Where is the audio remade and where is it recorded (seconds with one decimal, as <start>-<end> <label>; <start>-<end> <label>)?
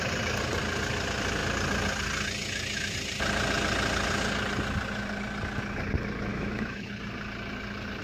0.0-6.3 recorded; 6.3-6.9 remade; 6.9-8.0 recorded